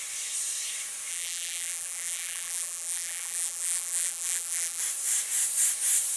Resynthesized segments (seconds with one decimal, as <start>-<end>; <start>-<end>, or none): 1.1-4.8

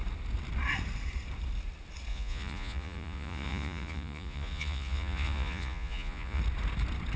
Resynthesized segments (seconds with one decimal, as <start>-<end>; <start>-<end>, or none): 2.1-6.4

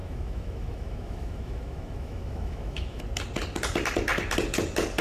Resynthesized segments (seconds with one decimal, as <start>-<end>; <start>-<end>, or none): 0.0-3.0

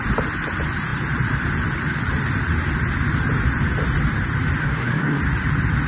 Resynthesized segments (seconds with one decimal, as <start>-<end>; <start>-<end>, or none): 4.6-5.2

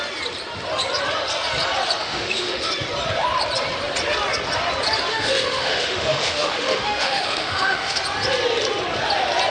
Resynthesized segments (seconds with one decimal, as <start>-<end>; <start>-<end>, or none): 2.0-2.7; 5.1-8.0